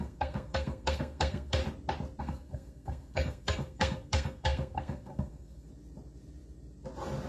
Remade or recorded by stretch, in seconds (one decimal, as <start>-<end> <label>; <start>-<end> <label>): 0.0-1.6 remade; 1.6-2.2 recorded; 2.2-5.7 remade; 5.7-7.3 recorded